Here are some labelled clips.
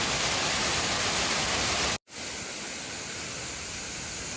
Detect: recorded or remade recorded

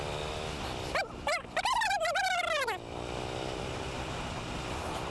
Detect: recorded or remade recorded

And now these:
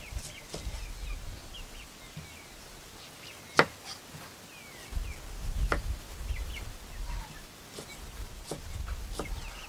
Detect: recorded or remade recorded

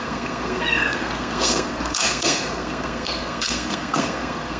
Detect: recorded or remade remade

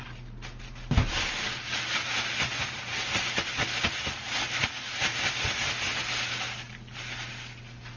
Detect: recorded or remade recorded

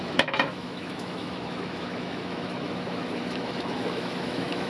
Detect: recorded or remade remade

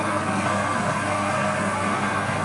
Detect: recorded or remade remade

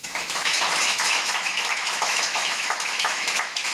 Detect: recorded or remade remade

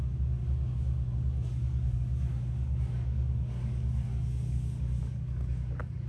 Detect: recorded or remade remade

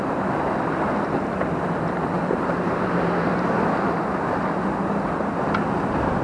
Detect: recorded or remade recorded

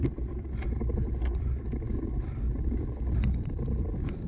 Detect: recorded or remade recorded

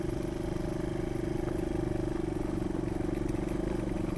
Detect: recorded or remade recorded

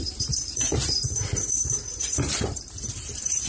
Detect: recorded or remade remade